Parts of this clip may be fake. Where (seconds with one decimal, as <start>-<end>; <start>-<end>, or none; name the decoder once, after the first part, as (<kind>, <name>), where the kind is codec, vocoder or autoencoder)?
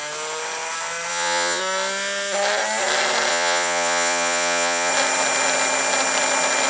1.1-1.6 (vocoder, Vocos); 3.3-4.9